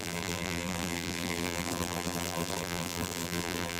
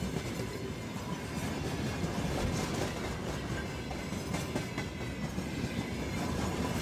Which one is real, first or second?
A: second